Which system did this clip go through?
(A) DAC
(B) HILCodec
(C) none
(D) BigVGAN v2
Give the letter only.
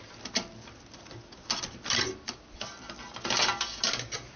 D